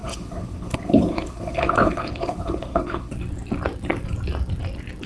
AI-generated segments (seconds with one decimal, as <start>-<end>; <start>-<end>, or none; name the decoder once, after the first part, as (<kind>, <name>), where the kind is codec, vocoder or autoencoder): 0.0-3.1 (codec, HILCodec)